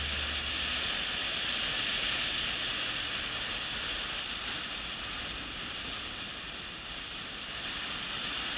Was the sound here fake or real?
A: real